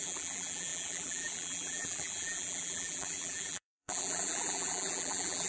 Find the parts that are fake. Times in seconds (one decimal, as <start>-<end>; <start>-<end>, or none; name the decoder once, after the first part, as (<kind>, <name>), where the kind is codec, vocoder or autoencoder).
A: 0.0-5.5 (vocoder, BigVGAN v2)